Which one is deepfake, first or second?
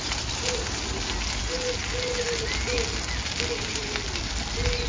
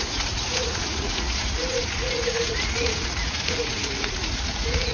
second